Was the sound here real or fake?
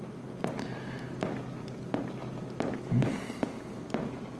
real